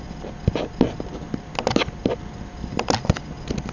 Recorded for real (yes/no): yes